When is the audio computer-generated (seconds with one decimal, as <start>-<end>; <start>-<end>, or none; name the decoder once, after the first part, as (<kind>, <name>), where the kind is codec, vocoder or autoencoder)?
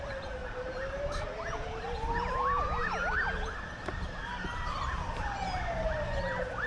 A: 0.4-1.2 (vocoder, BigVGAN v2)